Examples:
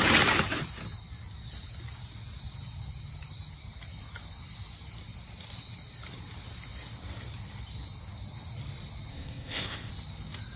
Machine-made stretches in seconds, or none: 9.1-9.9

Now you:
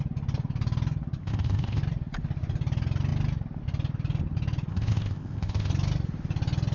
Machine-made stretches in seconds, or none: 1.2-1.8; 4.7-5.7

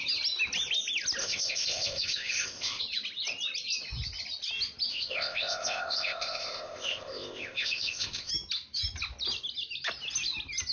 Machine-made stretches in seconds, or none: 1.2-2.8; 4.9-8.3

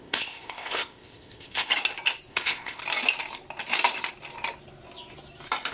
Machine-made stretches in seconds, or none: 0.0-1.7; 2.3-2.8

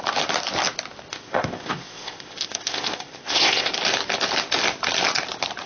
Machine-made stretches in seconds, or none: 1.1-3.7

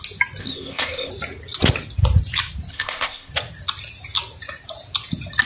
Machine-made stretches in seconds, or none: 0.4-1.1; 2.7-3.3

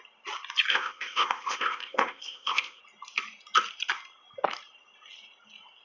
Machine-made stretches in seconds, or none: 0.7-2.8